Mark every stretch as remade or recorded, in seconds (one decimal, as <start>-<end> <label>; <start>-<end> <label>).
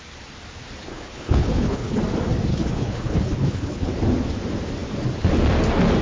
0.0-0.9 recorded; 0.9-2.0 remade; 2.0-2.5 recorded; 2.5-3.9 remade; 3.9-6.0 recorded